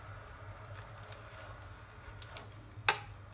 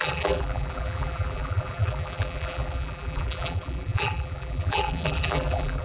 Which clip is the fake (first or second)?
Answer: second